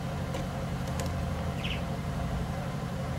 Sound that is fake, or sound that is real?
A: fake